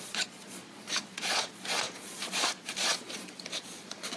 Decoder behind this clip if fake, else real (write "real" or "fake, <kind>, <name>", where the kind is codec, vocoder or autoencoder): fake, vocoder, Vocos